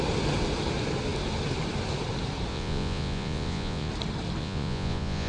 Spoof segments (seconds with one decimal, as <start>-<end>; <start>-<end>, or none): 2.5-3.9; 4.4-5.3